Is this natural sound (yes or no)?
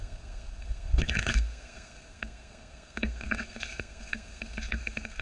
no